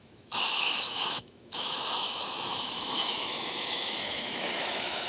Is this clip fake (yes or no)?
yes